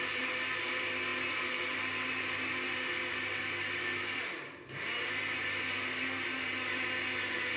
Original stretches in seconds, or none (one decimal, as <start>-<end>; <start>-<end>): 0.0-7.6